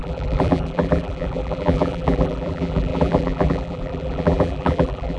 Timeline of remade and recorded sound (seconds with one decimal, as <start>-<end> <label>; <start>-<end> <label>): 0.0-5.2 remade